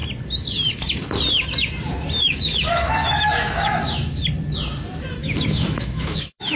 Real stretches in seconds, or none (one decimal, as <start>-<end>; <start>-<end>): 0.0-2.2; 4.2-5.2